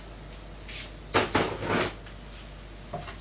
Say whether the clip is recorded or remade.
recorded